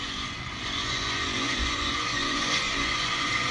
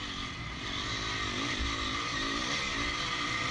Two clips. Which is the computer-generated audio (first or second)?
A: first